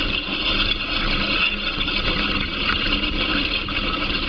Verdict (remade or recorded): recorded